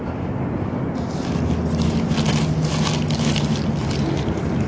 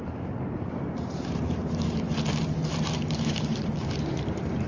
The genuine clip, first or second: first